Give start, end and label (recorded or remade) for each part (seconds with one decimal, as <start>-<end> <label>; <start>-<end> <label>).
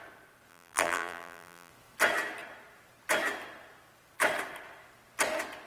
0.0-0.5 recorded; 0.5-1.7 remade; 1.7-5.7 recorded